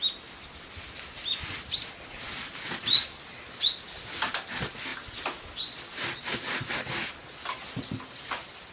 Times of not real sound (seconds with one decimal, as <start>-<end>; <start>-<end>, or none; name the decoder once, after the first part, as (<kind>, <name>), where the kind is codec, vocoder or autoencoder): none